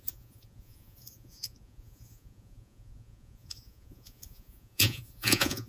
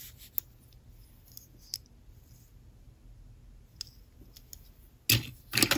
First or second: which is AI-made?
first